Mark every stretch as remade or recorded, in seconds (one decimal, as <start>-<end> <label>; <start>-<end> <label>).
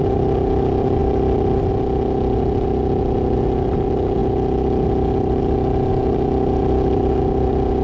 0.0-7.8 recorded